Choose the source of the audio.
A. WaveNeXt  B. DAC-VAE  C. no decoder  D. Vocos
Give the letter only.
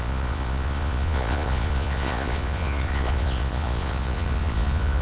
D